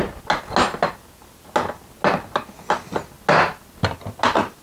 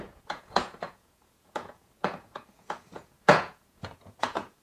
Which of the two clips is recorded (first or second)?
first